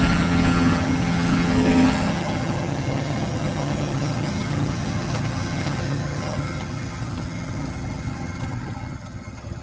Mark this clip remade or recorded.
remade